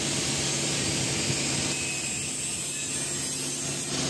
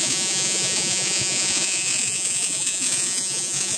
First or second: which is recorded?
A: first